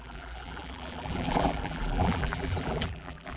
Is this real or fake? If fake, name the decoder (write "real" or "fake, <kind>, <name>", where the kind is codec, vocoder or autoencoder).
fake, vocoder, BigVGAN v2